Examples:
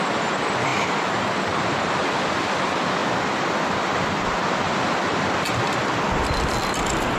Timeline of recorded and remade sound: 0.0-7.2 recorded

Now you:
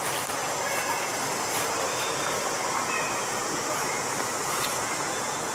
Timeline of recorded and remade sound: 0.0-1.9 recorded; 1.9-5.5 remade

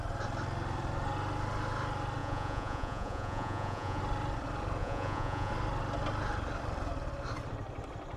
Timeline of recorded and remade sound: 0.0-2.2 recorded; 2.2-4.0 remade; 4.0-4.8 recorded; 4.8-5.5 remade; 5.5-8.2 recorded

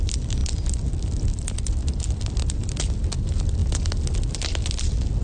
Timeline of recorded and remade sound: 0.0-5.2 recorded

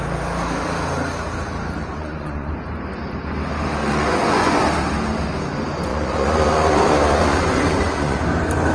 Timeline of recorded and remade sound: 0.0-1.8 recorded; 1.8-2.5 remade; 2.5-3.8 recorded; 3.8-4.6 remade; 4.6-5.9 recorded; 5.9-8.2 remade; 8.2-8.7 recorded

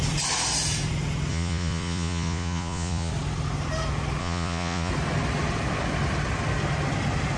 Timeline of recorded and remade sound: 0.0-1.3 recorded; 1.3-3.1 remade; 3.1-4.2 recorded; 4.2-4.9 remade; 4.9-7.4 recorded

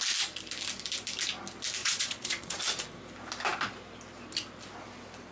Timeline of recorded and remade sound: 0.0-1.8 recorded; 1.8-2.6 remade; 2.6-5.3 recorded

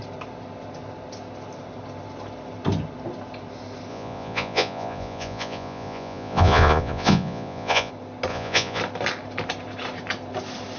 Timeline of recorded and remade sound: 0.0-3.9 recorded; 3.9-7.9 remade; 7.9-8.3 recorded; 8.3-8.8 remade; 8.8-10.8 recorded